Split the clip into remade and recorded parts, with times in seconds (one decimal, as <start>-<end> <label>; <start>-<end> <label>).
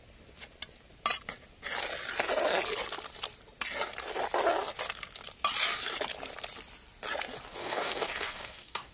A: 0.0-7.6 recorded; 7.6-8.9 remade